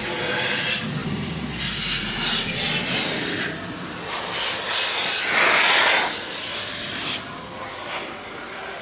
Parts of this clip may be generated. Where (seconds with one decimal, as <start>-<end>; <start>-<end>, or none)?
none